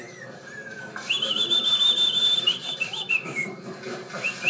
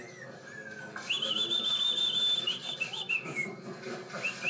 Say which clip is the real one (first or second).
second